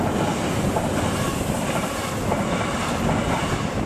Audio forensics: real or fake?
real